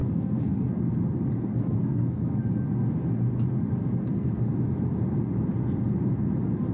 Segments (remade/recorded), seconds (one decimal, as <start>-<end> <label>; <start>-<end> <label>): 0.0-0.6 remade; 0.6-1.5 recorded; 1.5-2.4 remade; 2.4-4.0 recorded; 4.0-4.5 remade; 4.5-6.7 recorded